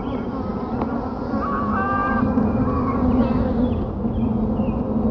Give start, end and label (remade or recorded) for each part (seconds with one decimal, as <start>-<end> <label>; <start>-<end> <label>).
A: 0.0-5.1 recorded